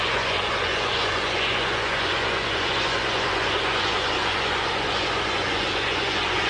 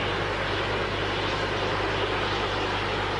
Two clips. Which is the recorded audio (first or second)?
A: second